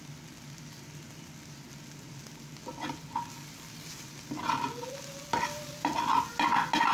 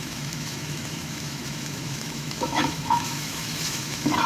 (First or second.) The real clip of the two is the first